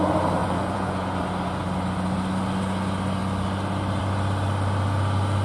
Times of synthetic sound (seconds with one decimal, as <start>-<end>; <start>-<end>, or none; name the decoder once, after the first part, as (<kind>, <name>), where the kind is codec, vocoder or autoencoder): 0.4-1.2 (vocoder, Vocos)